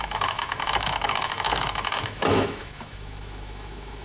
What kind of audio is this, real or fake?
fake